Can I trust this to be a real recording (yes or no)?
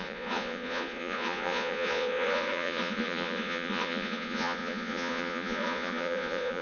no